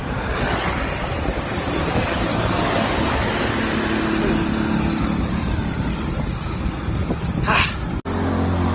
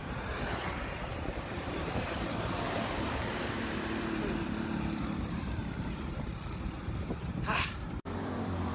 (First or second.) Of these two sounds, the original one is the first